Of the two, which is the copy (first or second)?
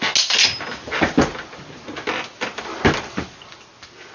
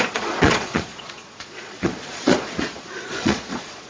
second